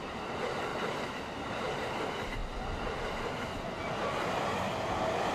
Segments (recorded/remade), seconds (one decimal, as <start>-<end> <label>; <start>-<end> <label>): 0.0-5.3 recorded